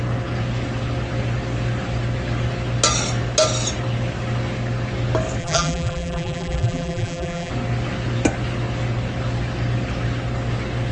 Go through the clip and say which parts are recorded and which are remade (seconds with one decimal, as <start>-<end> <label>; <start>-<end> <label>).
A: 0.0-5.4 recorded; 5.4-7.5 remade; 7.5-10.9 recorded